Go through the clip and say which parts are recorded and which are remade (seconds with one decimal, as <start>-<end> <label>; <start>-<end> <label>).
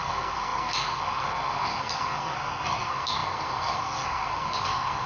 0.0-5.1 remade